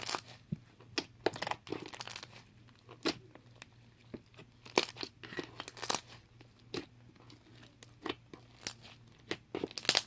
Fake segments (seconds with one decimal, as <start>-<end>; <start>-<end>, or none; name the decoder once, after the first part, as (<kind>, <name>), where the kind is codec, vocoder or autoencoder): none